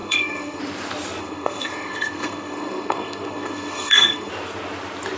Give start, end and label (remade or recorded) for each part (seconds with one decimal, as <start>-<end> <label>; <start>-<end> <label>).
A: 0.0-0.6 remade; 0.6-1.2 recorded; 1.2-4.3 remade; 4.3-5.2 recorded